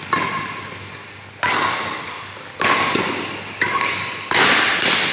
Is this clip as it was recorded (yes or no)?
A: no